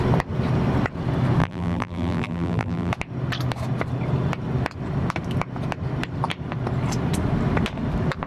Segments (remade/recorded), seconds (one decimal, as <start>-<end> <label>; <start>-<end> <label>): 0.0-1.4 recorded; 1.4-2.9 remade; 2.9-8.3 recorded